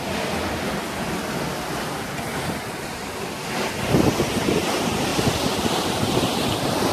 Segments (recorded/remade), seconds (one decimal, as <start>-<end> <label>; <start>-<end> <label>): 0.0-6.9 recorded